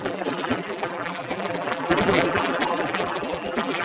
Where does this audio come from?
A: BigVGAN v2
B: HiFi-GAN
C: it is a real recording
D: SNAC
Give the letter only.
A